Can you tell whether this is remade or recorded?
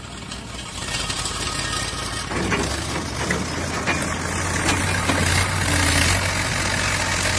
recorded